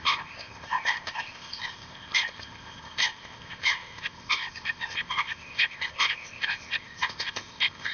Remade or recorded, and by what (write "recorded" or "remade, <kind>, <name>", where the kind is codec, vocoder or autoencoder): remade, codec, ZipCodec